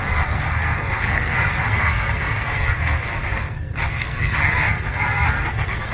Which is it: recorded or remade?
remade